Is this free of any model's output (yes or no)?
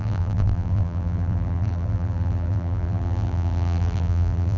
no